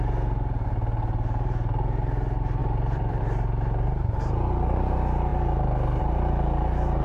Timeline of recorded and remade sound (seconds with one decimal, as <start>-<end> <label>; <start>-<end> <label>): 0.0-2.6 recorded; 2.6-3.2 remade; 3.2-7.0 recorded